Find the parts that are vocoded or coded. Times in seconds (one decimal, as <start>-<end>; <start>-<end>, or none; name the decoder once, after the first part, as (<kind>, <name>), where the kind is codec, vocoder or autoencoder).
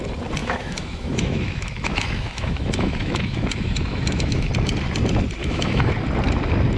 0.4-4.5 (autoencoder, DAC-VAE); 5.4-5.9